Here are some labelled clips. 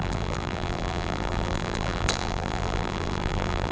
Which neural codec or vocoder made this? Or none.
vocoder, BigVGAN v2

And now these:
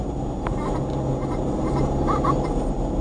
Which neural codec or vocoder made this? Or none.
none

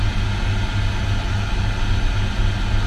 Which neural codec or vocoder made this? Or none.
none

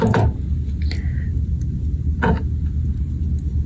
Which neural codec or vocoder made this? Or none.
none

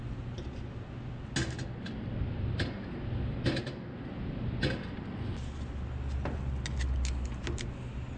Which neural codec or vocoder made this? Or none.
none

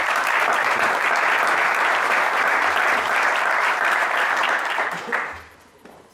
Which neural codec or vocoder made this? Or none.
vocoder, BigVGAN v2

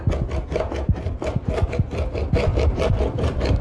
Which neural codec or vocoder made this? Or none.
none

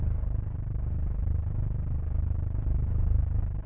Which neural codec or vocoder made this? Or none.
none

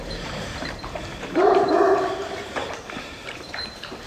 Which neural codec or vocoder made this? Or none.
vocoder, BigVGAN v2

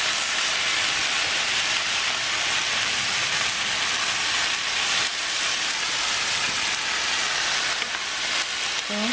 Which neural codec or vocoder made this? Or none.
none